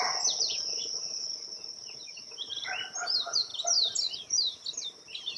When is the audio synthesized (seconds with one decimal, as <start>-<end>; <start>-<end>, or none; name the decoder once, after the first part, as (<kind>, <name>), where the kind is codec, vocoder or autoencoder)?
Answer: none